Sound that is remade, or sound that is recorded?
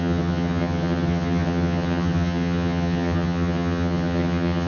remade